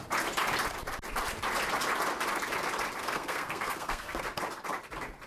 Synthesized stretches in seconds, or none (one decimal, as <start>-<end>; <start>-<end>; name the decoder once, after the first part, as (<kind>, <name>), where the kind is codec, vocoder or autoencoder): 3.0-4.2 (codec, SNAC)